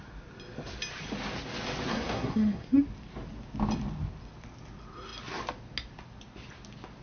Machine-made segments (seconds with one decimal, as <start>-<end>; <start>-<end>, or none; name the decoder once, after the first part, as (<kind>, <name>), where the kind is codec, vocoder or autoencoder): 1.9-2.8 (codec, SNAC)